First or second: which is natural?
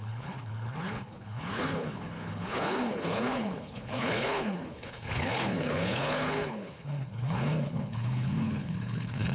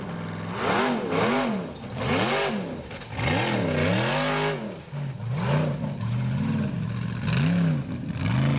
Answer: second